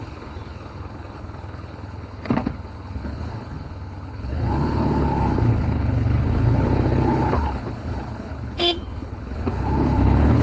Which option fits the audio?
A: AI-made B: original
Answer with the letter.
A